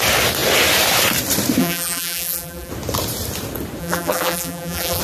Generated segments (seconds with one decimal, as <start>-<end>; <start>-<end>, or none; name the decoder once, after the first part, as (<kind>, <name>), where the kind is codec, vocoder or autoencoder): 1.6-2.7 (vocoder, BigVGAN v2); 3.8-5.0